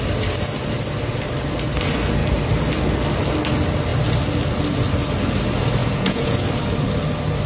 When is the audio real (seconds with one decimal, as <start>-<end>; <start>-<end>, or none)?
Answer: 0.0-5.8; 6.4-7.5